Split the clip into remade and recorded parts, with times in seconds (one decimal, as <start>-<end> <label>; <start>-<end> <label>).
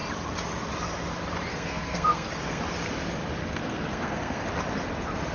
0.0-1.5 recorded; 1.5-2.6 remade; 2.6-3.4 recorded; 3.4-4.4 remade; 4.4-5.3 recorded